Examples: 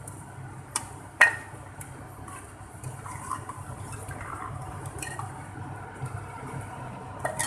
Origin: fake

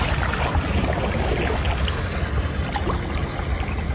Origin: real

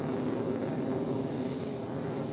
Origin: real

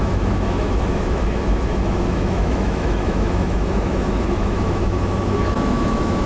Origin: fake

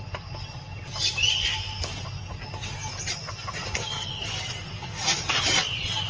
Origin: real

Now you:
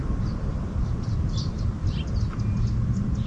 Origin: real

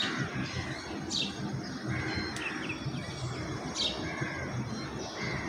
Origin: real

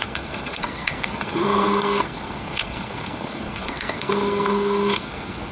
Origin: fake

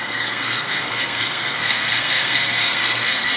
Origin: fake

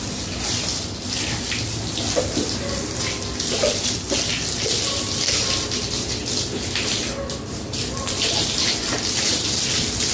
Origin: real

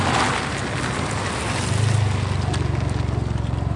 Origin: real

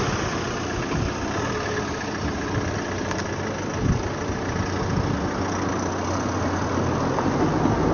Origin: real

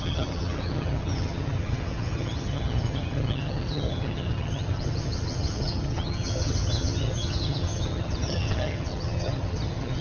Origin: fake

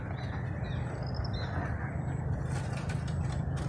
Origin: real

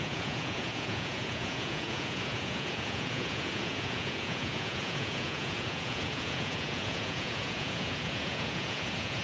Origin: fake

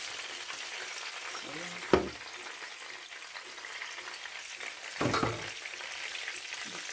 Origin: real